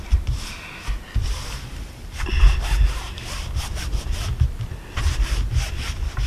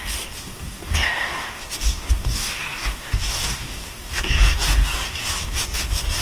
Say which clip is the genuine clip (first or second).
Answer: first